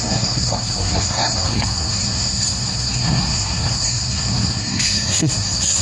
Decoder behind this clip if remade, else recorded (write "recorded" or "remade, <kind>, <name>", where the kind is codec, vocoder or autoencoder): remade, codec, SNAC